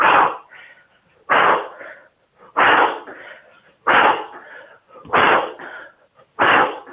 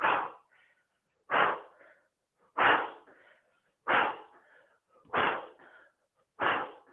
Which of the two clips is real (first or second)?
second